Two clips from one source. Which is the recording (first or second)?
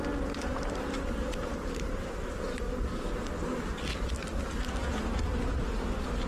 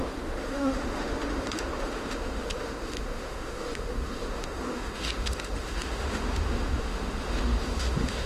first